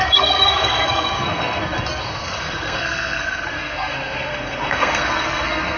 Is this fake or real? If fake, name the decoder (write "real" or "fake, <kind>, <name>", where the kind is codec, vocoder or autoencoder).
fake, codec, SNAC